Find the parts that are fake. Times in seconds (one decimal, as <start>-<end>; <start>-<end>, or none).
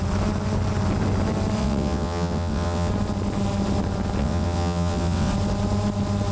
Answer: 1.6-2.9; 4.2-5.3